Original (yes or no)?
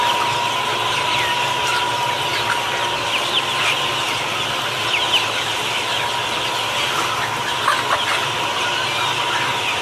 yes